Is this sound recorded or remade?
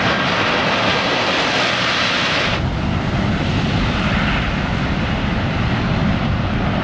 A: recorded